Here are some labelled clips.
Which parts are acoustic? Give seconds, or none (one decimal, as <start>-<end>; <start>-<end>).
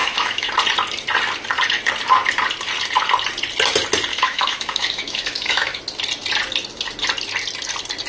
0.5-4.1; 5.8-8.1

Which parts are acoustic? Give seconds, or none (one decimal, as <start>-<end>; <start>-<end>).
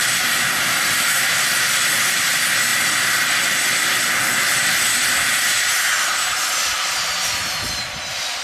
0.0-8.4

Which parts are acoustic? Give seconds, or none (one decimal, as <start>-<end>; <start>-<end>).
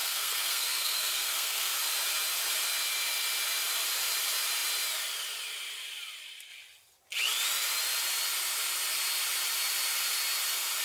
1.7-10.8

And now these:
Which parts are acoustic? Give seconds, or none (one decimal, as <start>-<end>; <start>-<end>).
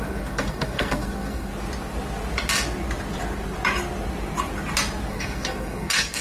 1.5-5.1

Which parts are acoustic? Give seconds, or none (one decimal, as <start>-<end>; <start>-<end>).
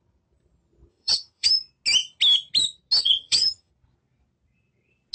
0.0-0.9; 1.5-3.0; 3.7-5.1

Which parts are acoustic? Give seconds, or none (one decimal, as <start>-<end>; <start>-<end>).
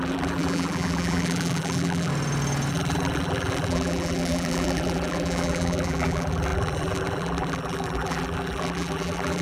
2.1-2.7